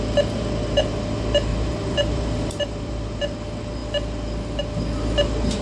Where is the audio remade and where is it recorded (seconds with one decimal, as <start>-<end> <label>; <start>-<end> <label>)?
0.0-1.5 recorded; 1.5-3.2 remade; 3.2-5.6 recorded